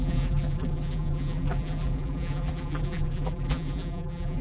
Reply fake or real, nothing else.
fake